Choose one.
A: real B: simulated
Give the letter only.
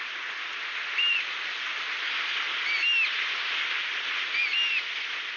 A